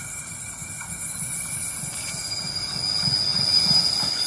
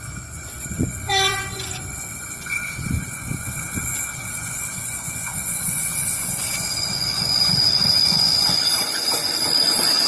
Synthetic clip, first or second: second